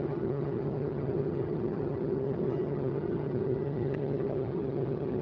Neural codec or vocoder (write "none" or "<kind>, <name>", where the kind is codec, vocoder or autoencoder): vocoder, HiFi-GAN